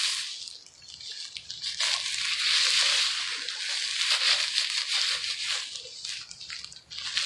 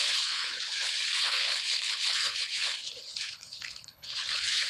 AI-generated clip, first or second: second